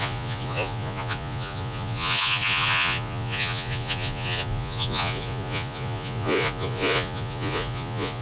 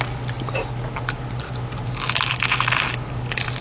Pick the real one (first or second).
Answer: second